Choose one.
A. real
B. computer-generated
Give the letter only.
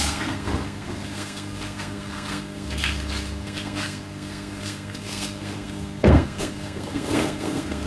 B